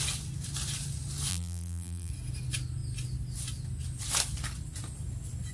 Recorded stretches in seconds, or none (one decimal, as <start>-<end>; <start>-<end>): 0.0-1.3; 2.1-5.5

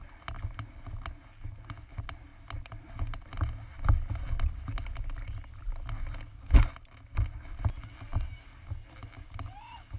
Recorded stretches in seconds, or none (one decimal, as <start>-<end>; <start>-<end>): 0.0-10.0

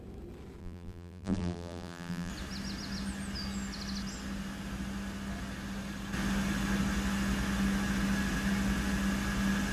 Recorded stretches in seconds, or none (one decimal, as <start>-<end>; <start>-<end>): 0.0-0.6; 2.3-9.7

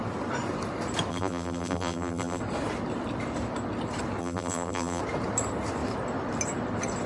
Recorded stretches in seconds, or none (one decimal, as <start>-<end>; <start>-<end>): 0.0-1.1; 2.4-4.2; 5.0-7.1

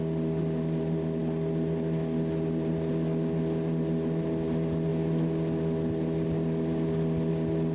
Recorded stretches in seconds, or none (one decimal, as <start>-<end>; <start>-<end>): 0.0-7.7

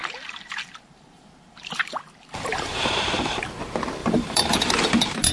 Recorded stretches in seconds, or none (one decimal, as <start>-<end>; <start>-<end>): 2.9-4.0; 4.7-5.3

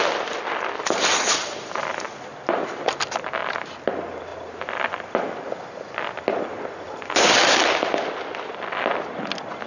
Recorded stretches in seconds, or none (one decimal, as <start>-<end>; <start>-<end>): 0.0-9.7

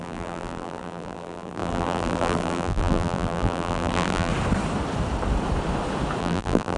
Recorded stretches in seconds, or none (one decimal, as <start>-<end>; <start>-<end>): 4.3-6.2